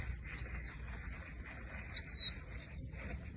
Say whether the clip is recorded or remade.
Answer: recorded